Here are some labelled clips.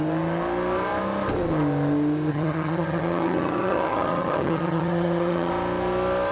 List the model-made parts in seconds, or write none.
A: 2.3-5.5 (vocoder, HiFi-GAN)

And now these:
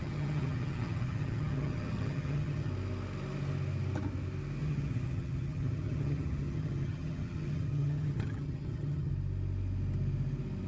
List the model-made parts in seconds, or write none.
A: 0.0-2.7 (vocoder, HiFi-GAN); 4.6-9.1

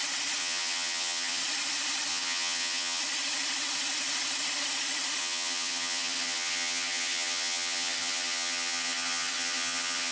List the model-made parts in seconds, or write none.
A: 0.4-1.4 (vocoder, HiFi-GAN); 2.1-3.0; 5.2-10.1

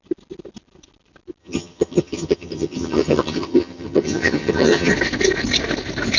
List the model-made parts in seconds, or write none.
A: 1.4-4.9 (vocoder, HiFi-GAN)

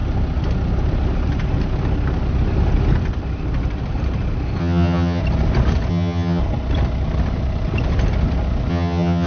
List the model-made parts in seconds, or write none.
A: 4.6-5.2 (vocoder, HiFi-GAN); 5.9-6.4; 8.7-9.3